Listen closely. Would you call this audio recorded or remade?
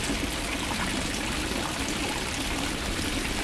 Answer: recorded